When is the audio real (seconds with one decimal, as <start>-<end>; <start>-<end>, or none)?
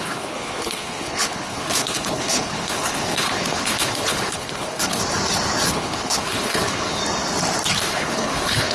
5.0-5.7; 7.0-7.8